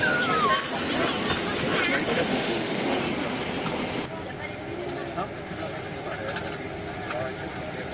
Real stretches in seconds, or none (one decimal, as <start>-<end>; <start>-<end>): 0.0-2.1; 3.0-7.9